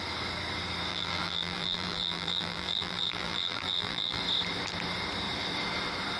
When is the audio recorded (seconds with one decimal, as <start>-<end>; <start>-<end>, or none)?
0.0-0.9; 4.2-6.2